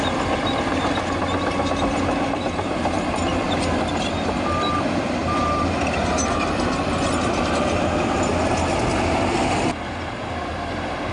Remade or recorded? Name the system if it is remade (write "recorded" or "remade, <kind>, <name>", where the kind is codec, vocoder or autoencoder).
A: remade, vocoder, BigVGAN v2